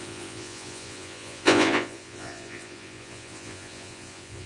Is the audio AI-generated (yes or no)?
yes